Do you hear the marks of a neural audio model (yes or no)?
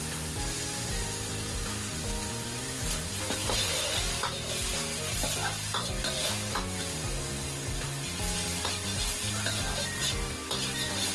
no